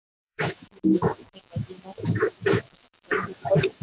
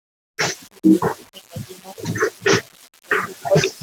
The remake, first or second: first